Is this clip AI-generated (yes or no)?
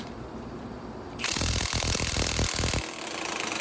yes